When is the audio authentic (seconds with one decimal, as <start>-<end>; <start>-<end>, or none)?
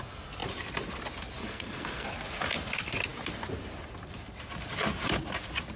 0.0-1.4; 2.1-5.8